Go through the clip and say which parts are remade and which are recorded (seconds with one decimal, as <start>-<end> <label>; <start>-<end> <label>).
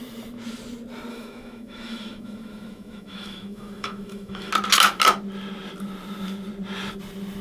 0.0-1.1 recorded; 1.1-4.5 remade; 4.5-7.4 recorded